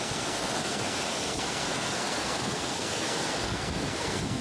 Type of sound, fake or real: fake